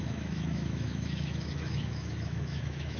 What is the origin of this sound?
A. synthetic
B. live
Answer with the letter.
A